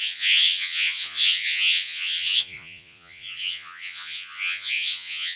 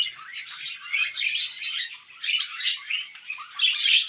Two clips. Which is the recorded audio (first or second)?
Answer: second